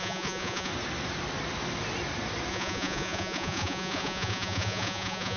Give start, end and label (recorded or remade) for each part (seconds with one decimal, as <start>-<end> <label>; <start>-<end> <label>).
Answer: 0.0-0.7 remade; 0.7-2.5 recorded; 2.5-5.4 remade